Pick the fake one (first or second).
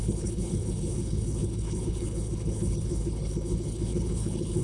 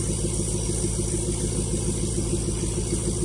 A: first